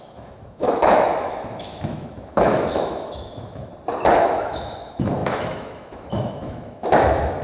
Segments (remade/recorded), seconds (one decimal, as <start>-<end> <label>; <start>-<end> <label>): 0.0-3.7 remade; 3.7-4.2 recorded; 4.2-7.4 remade